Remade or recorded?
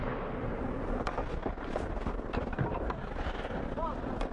recorded